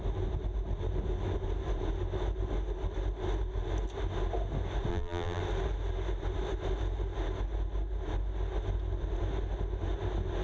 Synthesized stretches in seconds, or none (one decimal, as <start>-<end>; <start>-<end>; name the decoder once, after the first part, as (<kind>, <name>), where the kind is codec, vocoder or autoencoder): 4.9-5.4 (vocoder, BigVGAN v2)

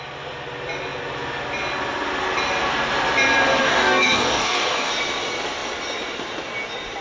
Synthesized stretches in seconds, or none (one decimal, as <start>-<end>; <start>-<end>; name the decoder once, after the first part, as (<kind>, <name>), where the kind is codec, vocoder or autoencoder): 3.6-4.9 (codec, DAC)

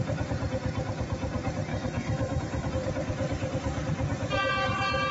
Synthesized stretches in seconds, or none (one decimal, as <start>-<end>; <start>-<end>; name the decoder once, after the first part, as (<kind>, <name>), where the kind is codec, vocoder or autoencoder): 1.7-2.7 (autoencoder, DAC-VAE)

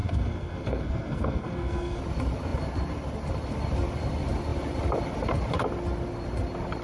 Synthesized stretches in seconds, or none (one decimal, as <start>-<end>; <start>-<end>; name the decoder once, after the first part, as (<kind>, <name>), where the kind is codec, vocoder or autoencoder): 0.0-2.0 (codec, SNAC)

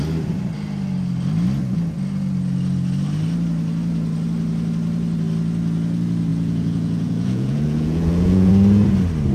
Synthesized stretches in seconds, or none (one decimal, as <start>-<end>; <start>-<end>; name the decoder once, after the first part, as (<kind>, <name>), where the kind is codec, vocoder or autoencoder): 6.3-8.5 (vocoder, Vocos)

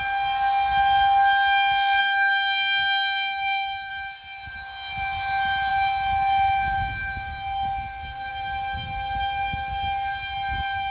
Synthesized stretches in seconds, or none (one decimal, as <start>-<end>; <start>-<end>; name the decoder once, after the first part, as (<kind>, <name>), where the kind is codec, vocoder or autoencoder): 2.0-3.9 (autoencoder, DAC-VAE)